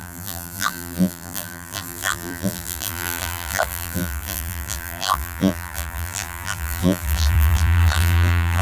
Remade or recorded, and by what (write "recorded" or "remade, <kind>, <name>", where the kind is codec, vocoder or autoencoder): remade, vocoder, BigVGAN v2